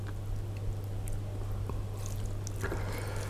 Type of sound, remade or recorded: recorded